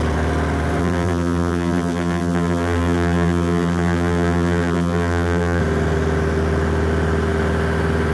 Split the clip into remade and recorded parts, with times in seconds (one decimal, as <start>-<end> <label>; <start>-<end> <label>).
0.0-0.8 recorded; 0.8-5.6 remade; 5.6-8.1 recorded

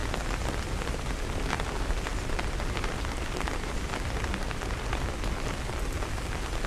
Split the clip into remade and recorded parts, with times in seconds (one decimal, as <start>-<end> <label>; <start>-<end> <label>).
0.0-2.1 recorded; 2.1-6.0 remade; 6.0-6.7 recorded